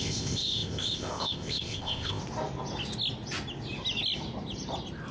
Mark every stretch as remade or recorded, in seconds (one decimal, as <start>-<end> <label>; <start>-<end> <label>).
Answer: 0.0-2.2 remade; 2.2-5.1 recorded